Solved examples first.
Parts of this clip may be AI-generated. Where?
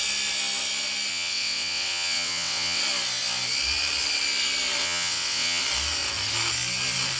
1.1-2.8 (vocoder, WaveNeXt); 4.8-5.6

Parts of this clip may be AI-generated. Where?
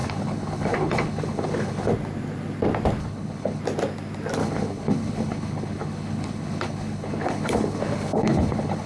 0.0-1.9 (codec, HILCodec); 3.0-3.6; 4.4-8.9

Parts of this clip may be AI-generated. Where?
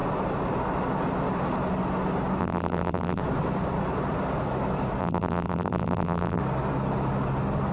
2.4-3.2 (vocoder, BigVGAN v2); 5.0-6.4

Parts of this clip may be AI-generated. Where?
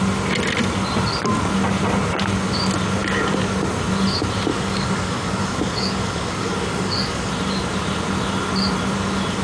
4.5-7.3 (codec, DAC)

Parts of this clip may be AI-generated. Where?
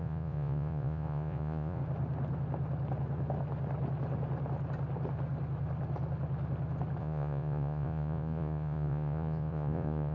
0.0-1.8 (vocoder, Vocos); 7.0-10.1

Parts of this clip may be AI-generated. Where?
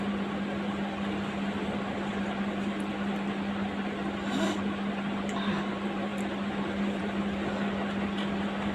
none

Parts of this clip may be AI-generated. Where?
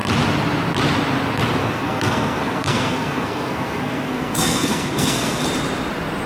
1.6-5.4 (codec, SNAC)